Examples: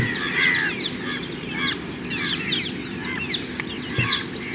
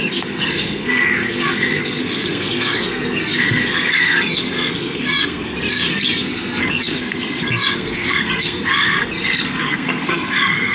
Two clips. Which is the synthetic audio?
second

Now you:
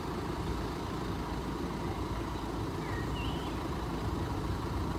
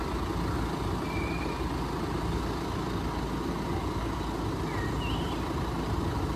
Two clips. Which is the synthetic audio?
first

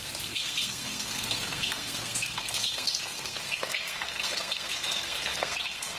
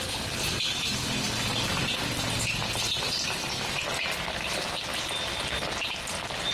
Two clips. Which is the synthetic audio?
first